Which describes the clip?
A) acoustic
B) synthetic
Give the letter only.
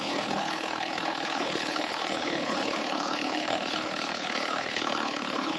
B